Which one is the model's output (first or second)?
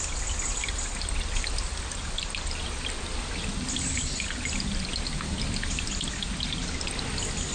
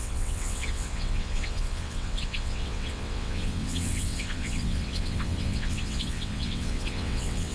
second